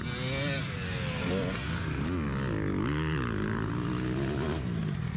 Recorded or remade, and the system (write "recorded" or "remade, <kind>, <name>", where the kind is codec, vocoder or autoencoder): recorded